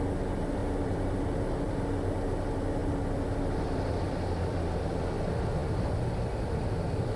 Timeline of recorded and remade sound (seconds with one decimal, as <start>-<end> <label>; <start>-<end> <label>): 0.0-0.6 recorded; 0.6-1.1 remade; 1.1-2.8 recorded; 2.8-4.8 remade; 4.8-5.6 recorded; 5.6-7.2 remade